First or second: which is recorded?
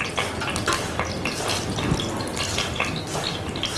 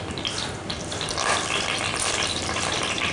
first